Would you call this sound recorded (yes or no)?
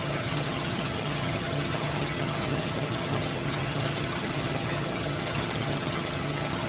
no